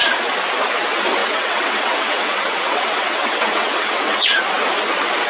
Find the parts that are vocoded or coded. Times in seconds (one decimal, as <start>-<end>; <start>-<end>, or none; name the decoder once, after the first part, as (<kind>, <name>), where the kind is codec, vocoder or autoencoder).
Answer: 1.2-4.4 (vocoder, WaveNeXt)